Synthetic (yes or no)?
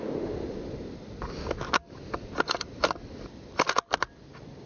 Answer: no